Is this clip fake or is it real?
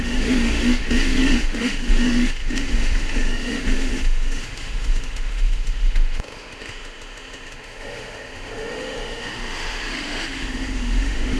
fake